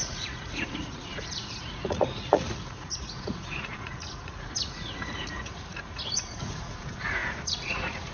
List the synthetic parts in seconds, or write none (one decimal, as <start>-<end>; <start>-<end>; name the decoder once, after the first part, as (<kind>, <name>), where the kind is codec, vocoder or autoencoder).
0.0-8.1 (vocoder, Vocos)